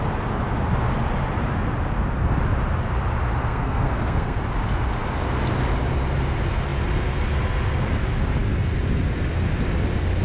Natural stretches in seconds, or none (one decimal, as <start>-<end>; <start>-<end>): 0.0-3.4; 4.4-10.2